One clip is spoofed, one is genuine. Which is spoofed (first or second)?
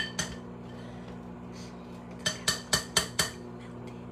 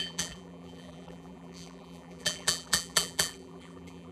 second